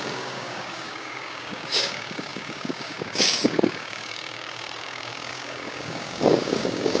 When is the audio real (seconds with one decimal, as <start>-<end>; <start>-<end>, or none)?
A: none